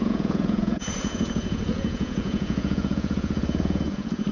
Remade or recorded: remade